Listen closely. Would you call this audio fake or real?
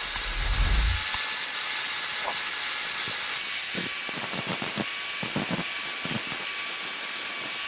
real